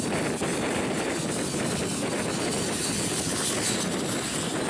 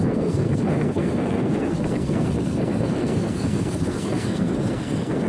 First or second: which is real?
first